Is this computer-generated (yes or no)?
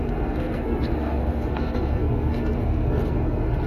yes